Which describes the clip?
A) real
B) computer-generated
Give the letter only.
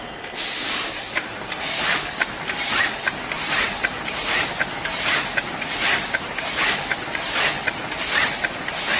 A